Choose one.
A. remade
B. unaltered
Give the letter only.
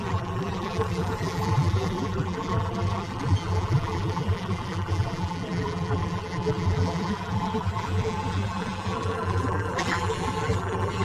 A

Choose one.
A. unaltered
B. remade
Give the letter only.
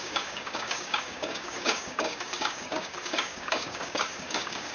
B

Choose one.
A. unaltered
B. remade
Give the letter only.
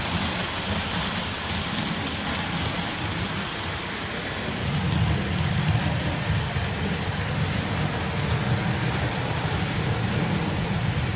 A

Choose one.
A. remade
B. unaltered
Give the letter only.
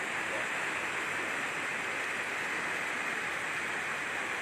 B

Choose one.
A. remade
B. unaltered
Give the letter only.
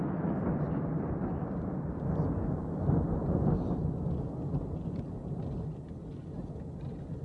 B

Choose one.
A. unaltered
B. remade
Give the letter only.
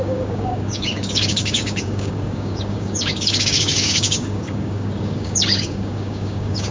B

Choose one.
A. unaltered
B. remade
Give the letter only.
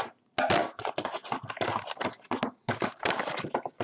A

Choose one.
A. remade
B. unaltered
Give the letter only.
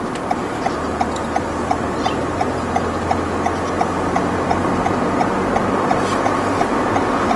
B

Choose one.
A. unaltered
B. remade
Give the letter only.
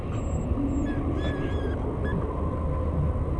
A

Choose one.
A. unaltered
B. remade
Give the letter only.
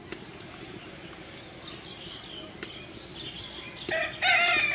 A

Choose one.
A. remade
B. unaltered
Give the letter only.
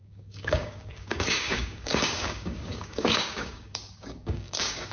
A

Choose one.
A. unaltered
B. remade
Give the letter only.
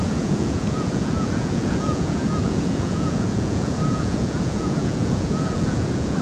B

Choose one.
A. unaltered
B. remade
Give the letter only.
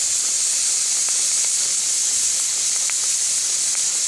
A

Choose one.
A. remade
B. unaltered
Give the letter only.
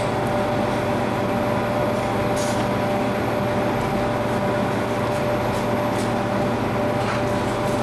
B